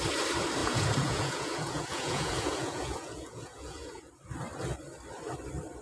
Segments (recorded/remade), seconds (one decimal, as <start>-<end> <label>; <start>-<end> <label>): 0.0-0.6 recorded; 0.6-4.1 remade; 4.1-5.8 recorded